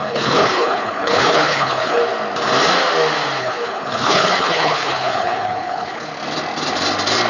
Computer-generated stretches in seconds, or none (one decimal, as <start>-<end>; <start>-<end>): 0.0-2.0; 3.4-6.1